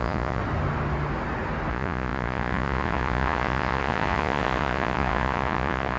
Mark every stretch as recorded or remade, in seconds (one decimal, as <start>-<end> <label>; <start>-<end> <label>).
0.0-0.4 remade; 0.4-1.7 recorded; 1.7-6.0 remade